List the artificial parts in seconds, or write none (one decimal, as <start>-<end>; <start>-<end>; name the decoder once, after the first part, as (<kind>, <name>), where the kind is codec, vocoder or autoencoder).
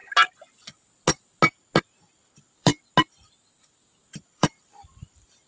2.1-2.7 (vocoder, BigVGAN v2); 4.1-5.5